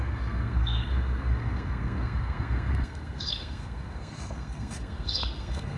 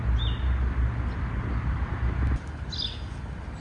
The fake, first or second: first